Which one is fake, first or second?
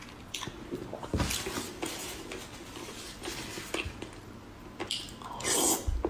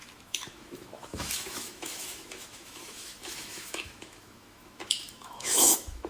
second